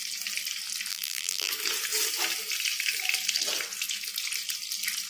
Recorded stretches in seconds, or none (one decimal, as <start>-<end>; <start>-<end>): 0.0-0.9; 1.5-5.1